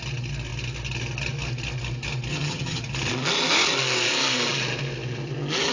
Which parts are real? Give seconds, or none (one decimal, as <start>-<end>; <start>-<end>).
0.0-2.3; 2.8-5.7

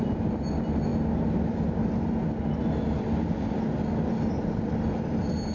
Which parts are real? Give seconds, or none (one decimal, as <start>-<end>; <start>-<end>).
0.0-5.5